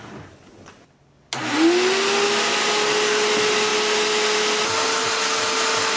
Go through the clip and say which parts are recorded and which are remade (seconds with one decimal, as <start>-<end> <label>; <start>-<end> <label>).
0.0-6.0 recorded